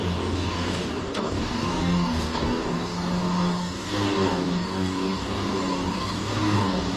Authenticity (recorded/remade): remade